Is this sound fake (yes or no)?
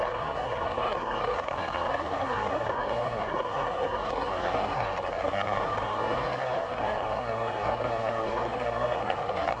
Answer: yes